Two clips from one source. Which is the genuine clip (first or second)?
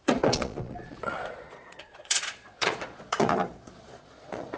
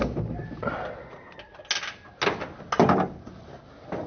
second